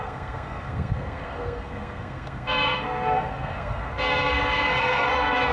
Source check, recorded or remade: remade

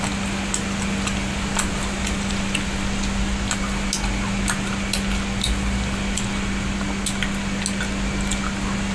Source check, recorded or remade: recorded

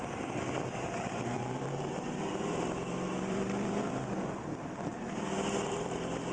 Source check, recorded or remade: remade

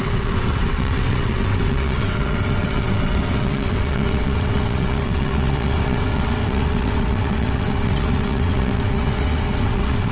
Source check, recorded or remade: remade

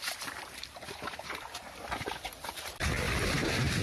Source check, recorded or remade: remade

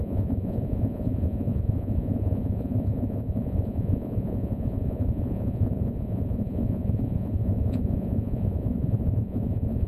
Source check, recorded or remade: remade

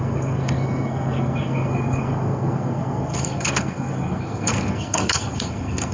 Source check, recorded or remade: remade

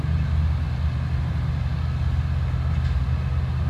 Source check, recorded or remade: recorded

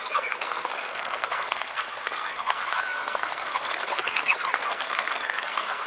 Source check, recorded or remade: remade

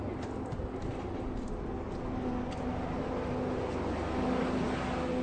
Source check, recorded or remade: recorded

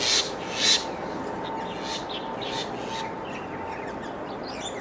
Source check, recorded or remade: recorded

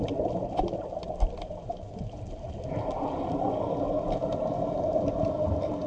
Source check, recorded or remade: recorded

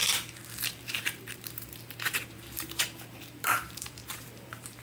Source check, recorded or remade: remade